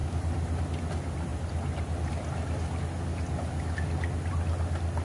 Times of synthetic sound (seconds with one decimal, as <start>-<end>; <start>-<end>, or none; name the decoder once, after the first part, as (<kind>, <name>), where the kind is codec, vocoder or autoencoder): none

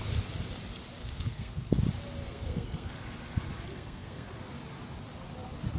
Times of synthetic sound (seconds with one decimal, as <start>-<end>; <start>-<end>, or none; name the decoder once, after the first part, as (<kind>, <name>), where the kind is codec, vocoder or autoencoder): 1.0-1.6 (codec, SNAC); 2.2-3.0; 3.7-4.4

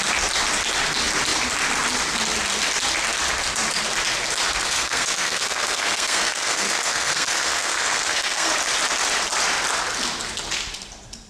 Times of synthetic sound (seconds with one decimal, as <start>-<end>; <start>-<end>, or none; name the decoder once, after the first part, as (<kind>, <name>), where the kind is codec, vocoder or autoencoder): 4.6-8.5 (codec, SNAC)

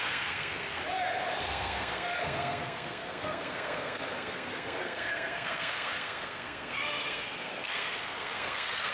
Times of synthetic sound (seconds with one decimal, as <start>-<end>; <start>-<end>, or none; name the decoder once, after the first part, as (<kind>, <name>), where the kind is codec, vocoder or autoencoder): 0.0-0.8 (codec, SNAC); 1.4-8.9

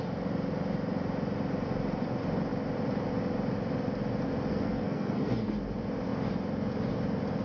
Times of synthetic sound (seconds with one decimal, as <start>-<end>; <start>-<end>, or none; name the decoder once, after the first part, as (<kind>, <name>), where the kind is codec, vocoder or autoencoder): 4.5-5.5 (codec, SNAC)

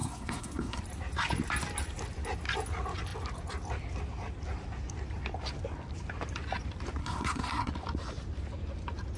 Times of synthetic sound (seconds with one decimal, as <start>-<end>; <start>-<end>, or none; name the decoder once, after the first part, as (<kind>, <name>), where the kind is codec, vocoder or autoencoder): 0.0-0.8 (codec, SNAC); 7.0-7.7